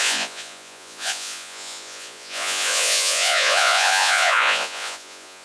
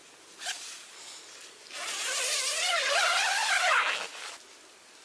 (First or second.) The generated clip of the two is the first